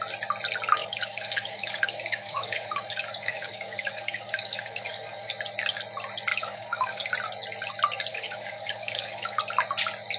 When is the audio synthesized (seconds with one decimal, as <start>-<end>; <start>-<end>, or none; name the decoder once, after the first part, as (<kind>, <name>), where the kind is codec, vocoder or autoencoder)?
0.8-5.3 (codec, DAC); 6.3-7.1; 8.1-9.4